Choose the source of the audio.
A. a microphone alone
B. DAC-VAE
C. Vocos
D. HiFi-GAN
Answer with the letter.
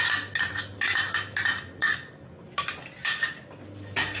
A